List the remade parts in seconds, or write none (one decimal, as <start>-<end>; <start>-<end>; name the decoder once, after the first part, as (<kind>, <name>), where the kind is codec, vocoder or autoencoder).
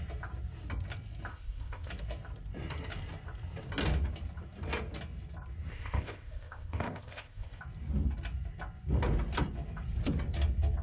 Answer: 1.3-1.9 (codec, ZipCodec); 5.7-7.6